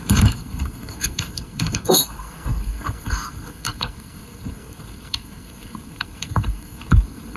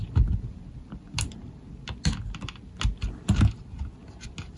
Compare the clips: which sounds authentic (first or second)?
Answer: second